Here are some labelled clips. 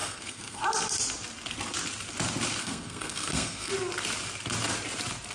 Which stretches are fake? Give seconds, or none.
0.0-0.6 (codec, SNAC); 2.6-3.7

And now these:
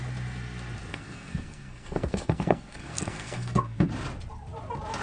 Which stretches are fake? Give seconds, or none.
0.9-3.9 (codec, SNAC)